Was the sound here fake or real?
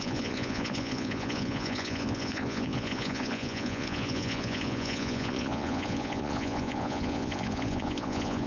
fake